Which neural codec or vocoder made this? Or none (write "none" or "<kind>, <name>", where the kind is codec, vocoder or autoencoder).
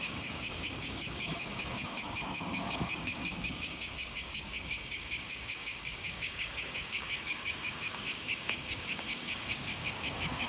codec, DAC